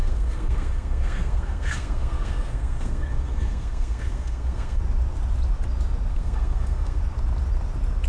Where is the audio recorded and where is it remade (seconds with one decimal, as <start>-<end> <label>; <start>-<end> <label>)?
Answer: 0.0-4.8 remade; 4.8-6.1 recorded; 6.1-7.0 remade; 7.0-8.1 recorded